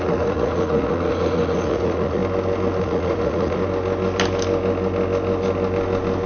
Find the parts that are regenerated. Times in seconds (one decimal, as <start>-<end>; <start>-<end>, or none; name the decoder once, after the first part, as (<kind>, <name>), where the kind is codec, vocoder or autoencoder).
0.0-2.2 (vocoder, Vocos); 2.8-3.6